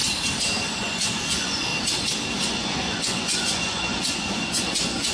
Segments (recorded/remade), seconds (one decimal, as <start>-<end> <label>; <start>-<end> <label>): 0.0-0.6 recorded; 0.6-1.7 remade; 1.7-2.5 recorded; 2.5-5.1 remade